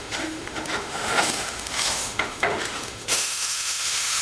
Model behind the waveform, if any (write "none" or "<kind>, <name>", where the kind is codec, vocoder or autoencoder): autoencoder, DAC-VAE